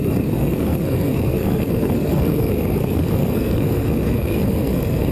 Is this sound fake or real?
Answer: fake